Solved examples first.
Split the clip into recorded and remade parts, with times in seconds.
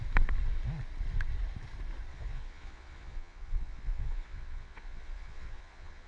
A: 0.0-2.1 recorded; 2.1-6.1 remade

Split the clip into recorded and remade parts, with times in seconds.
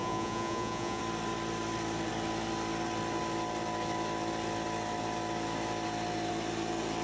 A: 0.0-1.0 remade; 1.0-7.0 recorded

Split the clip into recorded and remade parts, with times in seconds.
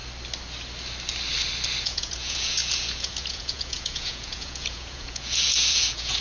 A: 0.0-1.8 recorded; 1.8-6.2 remade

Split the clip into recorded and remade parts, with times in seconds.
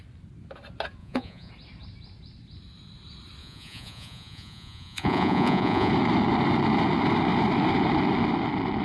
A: 0.0-1.0 recorded; 1.0-1.5 remade; 1.5-3.4 recorded; 3.4-5.9 remade; 5.9-8.8 recorded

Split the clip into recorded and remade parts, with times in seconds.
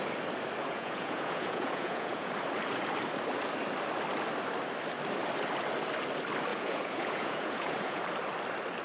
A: 0.0-0.6 recorded; 0.6-2.3 remade; 2.3-6.5 recorded; 6.5-8.0 remade; 8.0-8.8 recorded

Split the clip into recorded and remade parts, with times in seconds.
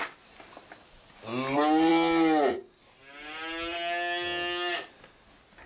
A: 0.0-5.7 recorded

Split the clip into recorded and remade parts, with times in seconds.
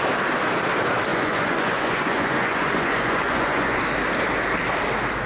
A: 0.0-1.1 recorded; 1.1-3.8 remade; 3.8-5.3 recorded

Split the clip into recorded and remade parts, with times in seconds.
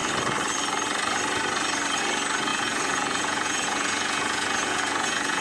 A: 0.0-2.5 recorded; 2.5-5.4 remade